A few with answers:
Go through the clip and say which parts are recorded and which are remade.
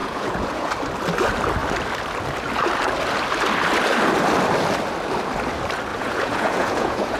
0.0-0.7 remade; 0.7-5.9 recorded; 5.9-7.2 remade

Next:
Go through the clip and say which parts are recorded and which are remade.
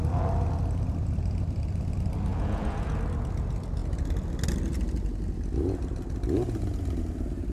0.0-2.3 recorded; 2.3-3.0 remade; 3.0-7.5 recorded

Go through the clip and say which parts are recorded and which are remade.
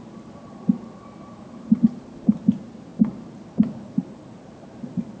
0.0-5.2 recorded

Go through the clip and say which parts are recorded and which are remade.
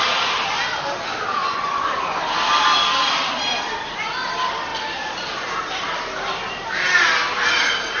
0.0-1.4 recorded; 1.4-2.2 remade; 2.2-8.0 recorded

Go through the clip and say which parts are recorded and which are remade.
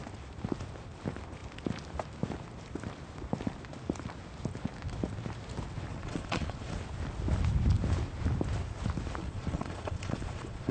0.0-5.9 recorded; 5.9-6.8 remade; 6.8-9.2 recorded; 9.2-10.7 remade